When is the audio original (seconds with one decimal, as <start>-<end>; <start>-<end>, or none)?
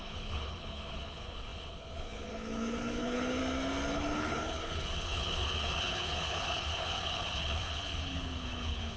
3.4-3.9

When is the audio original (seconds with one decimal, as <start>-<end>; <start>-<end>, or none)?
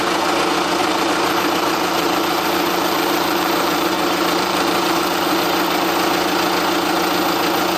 0.0-0.8; 5.3-7.8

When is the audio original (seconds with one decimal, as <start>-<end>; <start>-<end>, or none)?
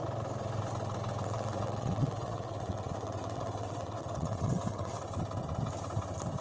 0.0-1.2; 5.0-6.4